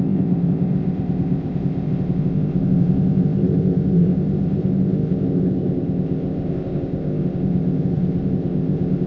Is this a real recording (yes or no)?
no